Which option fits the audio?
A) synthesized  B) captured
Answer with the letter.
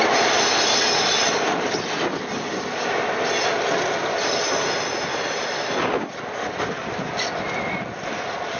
B